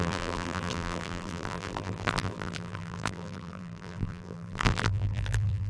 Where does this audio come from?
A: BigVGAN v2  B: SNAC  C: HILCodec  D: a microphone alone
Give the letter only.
A